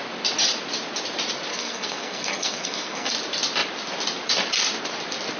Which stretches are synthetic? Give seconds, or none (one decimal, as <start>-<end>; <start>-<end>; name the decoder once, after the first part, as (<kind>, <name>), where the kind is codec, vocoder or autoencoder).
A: 1.5-3.1 (codec, SNAC)